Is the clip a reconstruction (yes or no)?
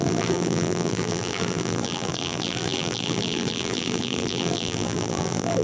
yes